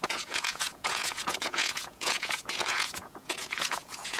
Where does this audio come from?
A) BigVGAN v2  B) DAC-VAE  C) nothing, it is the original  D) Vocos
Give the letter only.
D